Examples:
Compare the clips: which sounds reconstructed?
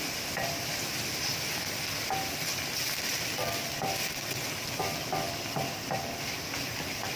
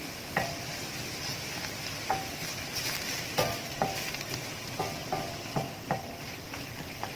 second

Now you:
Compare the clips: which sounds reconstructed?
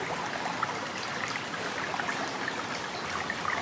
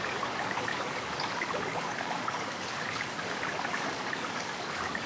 second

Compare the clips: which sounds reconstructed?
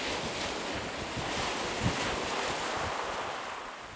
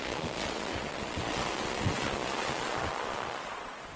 second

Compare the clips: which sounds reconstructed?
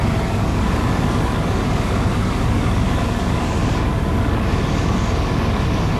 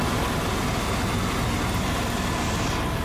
first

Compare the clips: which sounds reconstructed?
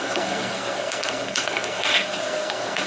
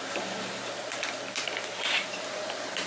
first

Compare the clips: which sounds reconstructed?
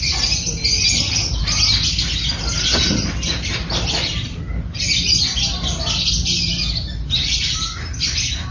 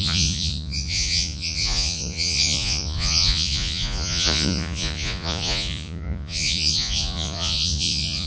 second